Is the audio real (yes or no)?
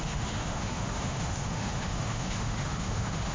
no